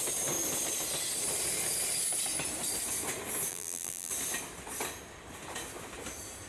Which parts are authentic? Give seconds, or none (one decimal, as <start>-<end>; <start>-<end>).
0.0-3.5; 4.1-6.5